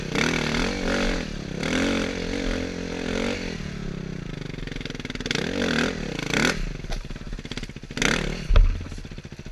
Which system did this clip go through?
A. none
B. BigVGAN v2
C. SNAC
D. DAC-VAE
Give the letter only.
A